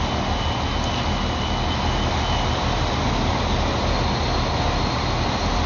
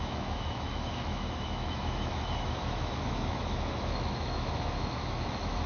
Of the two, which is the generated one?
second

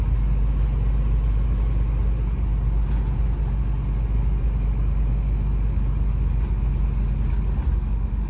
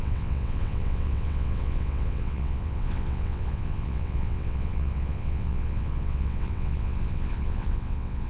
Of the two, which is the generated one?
second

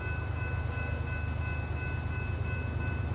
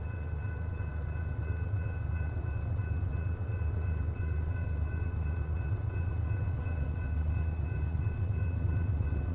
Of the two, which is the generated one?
second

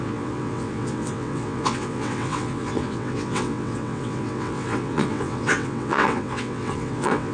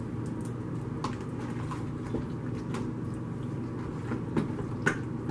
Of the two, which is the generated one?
first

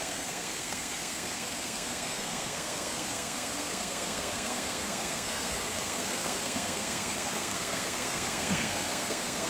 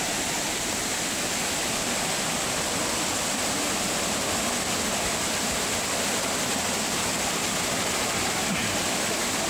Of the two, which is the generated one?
first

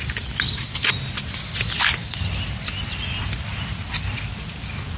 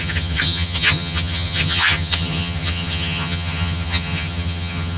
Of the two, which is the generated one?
second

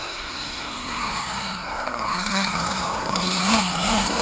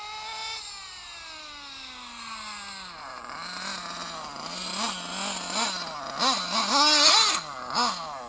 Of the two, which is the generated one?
first